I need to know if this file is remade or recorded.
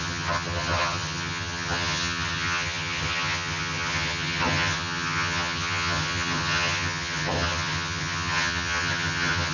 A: remade